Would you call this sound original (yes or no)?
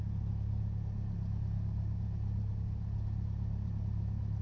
yes